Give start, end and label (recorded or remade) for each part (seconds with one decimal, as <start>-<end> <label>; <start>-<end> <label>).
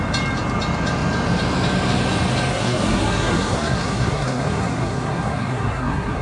0.0-2.5 recorded; 2.5-6.2 remade